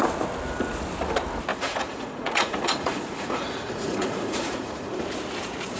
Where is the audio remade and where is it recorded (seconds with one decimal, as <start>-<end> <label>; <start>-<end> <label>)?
0.0-1.5 recorded; 1.5-5.0 remade; 5.0-5.8 recorded